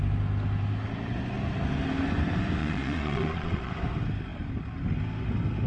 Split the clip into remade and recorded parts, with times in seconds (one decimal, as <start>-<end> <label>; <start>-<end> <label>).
0.0-2.6 recorded; 2.6-3.7 remade; 3.7-5.7 recorded